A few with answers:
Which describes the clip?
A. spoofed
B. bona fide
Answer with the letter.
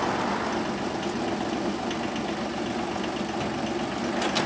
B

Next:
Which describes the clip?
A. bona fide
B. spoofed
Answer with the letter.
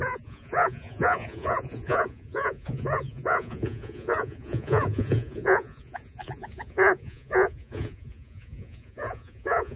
B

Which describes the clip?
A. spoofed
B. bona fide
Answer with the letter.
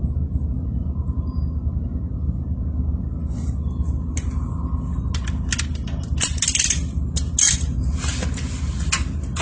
B